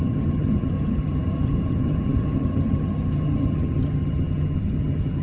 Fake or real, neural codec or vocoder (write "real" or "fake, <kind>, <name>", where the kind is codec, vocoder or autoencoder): fake, vocoder, HiFi-GAN